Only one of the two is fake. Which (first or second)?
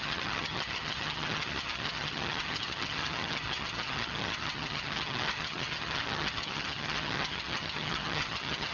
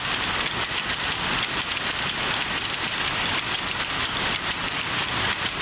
first